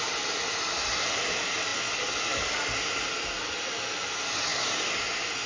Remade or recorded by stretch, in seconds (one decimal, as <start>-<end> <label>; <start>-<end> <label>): 0.0-5.5 recorded